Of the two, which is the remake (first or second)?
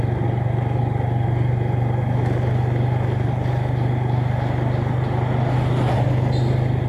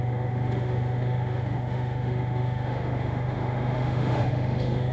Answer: second